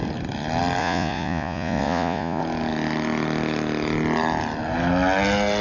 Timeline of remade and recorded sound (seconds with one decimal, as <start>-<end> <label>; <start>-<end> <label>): 0.0-0.8 recorded; 0.8-2.4 remade; 2.4-5.6 recorded